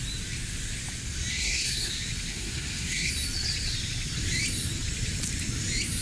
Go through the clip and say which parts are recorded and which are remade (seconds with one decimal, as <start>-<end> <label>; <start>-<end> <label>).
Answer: 0.0-1.3 recorded; 1.3-1.9 remade; 1.9-2.3 recorded; 2.3-3.1 remade; 3.1-6.0 recorded